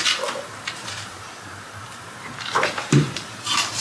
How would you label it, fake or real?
fake